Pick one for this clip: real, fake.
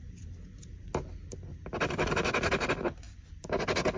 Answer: real